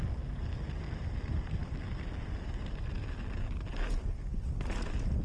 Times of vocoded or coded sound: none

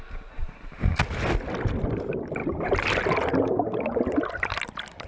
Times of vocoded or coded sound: none